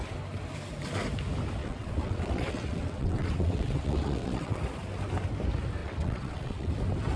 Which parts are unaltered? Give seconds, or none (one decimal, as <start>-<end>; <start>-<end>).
0.0-1.6; 4.6-5.8; 6.7-7.2